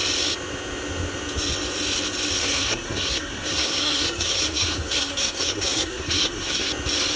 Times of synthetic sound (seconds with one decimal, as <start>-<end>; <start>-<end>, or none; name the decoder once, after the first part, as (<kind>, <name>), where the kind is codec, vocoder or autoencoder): 2.4-6.7 (codec, SNAC)